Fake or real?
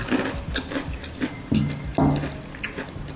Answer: real